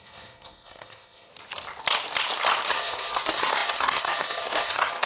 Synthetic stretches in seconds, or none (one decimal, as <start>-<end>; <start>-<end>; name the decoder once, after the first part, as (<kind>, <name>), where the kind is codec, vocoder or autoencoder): 0.0-1.3 (codec, SNAC); 2.7-5.1

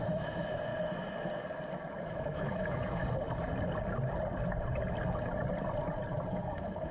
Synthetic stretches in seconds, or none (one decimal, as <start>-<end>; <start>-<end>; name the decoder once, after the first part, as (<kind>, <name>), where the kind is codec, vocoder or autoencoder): 0.0-0.7 (autoencoder, DAC-VAE); 2.0-3.0; 6.3-6.9

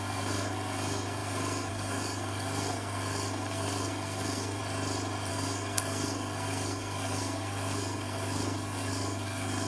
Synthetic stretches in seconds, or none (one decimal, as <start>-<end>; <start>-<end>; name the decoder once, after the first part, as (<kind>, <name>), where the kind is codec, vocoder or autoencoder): 0.0-4.6 (codec, SNAC); 5.3-9.7

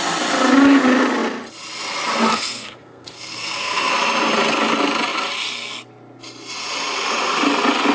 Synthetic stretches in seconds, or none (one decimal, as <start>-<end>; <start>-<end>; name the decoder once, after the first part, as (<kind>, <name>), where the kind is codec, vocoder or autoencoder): 2.3-3.9 (codec, SNAC)

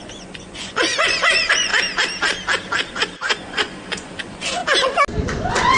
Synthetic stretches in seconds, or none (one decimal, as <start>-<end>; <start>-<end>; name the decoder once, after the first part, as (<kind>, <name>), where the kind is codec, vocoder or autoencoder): 0.0-1.7 (vocoder, Vocos); 2.9-4.6; 5.3-5.8